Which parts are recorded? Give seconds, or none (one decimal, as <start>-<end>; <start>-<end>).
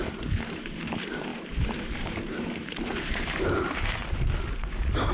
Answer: 4.0-5.1